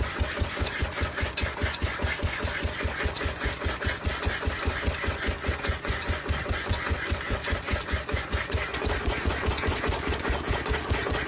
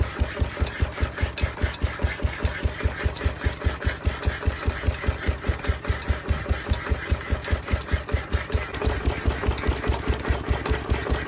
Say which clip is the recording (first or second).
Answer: second